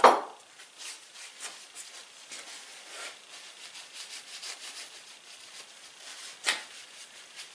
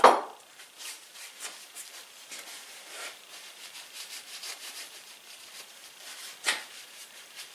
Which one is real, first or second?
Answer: first